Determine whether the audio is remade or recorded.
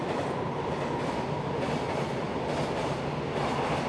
recorded